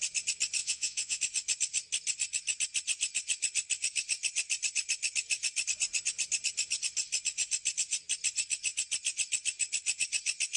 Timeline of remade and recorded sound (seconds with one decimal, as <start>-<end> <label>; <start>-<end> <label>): 0.0-0.6 recorded; 0.6-1.2 remade; 1.2-10.6 recorded